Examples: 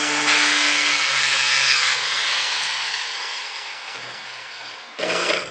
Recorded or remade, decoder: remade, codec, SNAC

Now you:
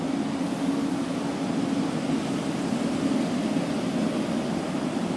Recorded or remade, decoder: recorded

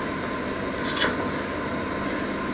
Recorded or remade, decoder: recorded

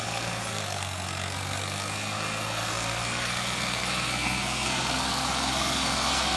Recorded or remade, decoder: remade, codec, SNAC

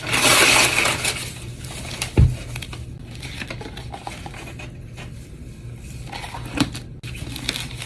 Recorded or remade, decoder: recorded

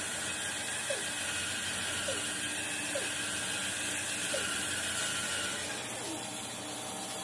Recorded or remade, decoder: recorded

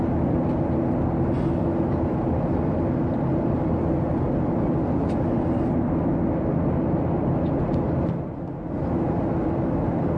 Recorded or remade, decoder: recorded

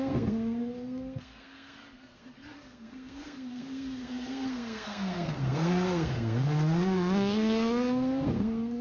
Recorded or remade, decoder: remade, codec, SNAC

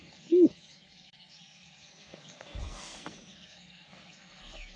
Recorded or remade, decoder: remade, codec, SNAC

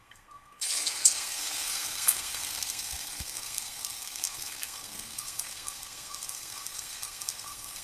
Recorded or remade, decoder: remade, codec, SNAC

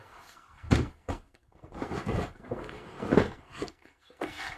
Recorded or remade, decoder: remade, codec, SNAC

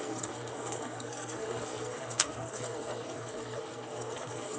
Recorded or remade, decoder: remade, codec, SNAC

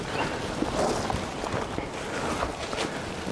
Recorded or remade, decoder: recorded